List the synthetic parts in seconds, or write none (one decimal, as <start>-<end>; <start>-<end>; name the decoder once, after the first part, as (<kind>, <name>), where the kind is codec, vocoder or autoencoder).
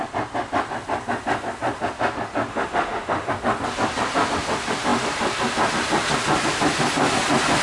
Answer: 2.5-3.3 (autoencoder, DAC-VAE)